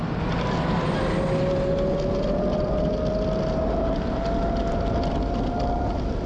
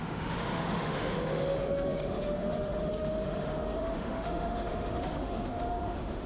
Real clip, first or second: first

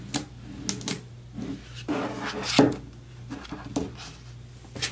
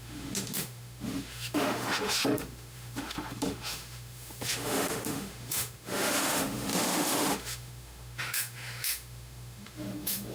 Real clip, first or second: first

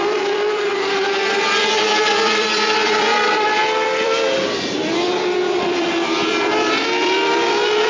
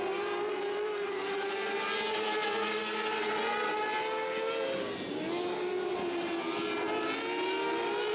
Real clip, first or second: second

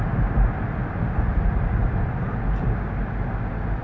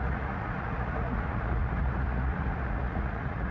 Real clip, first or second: first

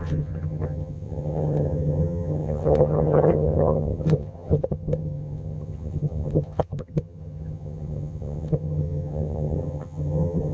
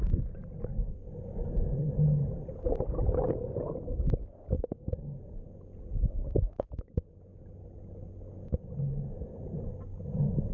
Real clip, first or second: second